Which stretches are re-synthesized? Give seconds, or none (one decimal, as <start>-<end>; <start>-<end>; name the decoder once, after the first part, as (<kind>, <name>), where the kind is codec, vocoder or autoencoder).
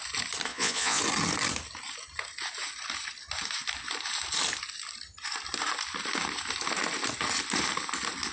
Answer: 0.5-1.0 (vocoder, Vocos)